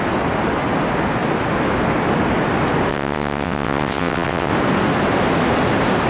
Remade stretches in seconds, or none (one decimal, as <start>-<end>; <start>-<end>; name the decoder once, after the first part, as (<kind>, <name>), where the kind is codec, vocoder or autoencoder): 2.9-4.5 (vocoder, WaveNeXt)